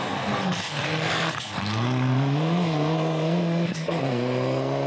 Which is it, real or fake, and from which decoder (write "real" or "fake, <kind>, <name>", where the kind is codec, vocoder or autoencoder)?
fake, codec, SNAC